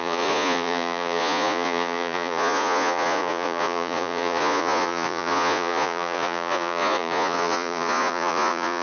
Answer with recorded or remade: remade